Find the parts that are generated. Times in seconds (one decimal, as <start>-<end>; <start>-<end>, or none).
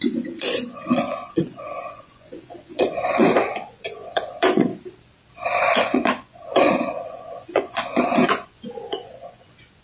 0.0-4.7; 5.8-9.8